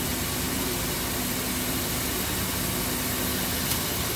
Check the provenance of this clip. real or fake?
real